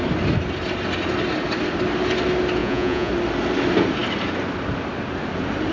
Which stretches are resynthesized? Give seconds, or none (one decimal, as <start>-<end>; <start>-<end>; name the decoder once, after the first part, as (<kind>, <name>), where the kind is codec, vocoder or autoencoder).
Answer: 2.6-3.1 (vocoder, Vocos)